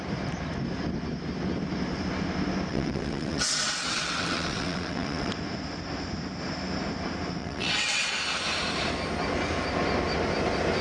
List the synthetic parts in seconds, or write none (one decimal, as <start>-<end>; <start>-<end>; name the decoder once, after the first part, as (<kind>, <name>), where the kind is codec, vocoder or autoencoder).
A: 2.7-5.3 (vocoder, WaveNeXt); 7.4-8.0